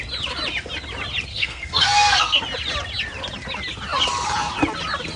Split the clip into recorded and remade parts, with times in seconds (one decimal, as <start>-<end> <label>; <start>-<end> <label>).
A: 0.0-1.3 recorded; 1.3-2.4 remade; 2.4-5.2 recorded